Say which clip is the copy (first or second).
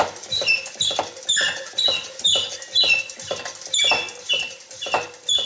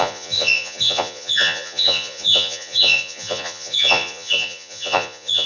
second